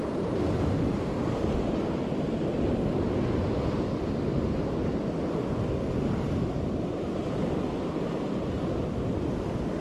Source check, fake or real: real